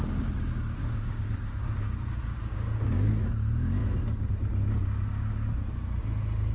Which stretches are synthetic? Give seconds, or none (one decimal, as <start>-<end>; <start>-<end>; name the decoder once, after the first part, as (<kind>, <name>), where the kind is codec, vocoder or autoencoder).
0.8-3.1 (codec, DAC)